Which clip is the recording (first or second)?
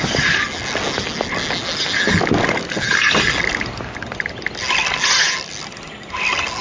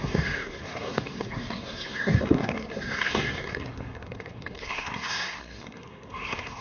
first